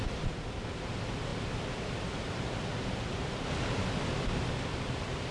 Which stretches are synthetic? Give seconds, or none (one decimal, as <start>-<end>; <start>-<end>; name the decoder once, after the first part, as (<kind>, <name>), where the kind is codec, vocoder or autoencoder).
none